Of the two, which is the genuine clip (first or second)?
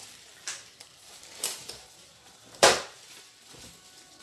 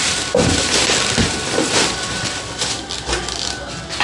second